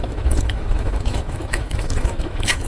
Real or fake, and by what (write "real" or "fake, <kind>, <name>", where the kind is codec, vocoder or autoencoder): fake, autoencoder, DAC-VAE